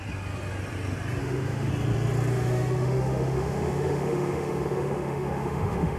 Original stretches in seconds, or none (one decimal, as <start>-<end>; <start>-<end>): 0.0-1.2; 1.7-2.3